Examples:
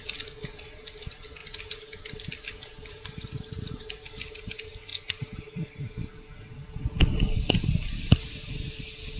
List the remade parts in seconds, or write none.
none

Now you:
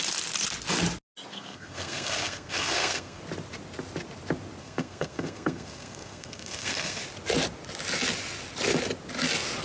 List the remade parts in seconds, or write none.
1.3-3.2 (codec, SNAC); 4.6-7.0